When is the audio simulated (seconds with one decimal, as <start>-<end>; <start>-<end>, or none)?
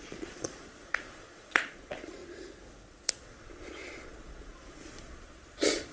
0.0-2.2; 2.9-5.9